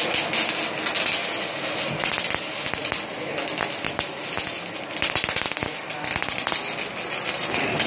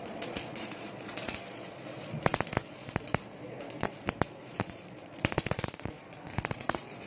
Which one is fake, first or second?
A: second